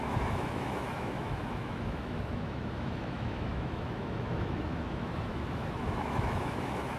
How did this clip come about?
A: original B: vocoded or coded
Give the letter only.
B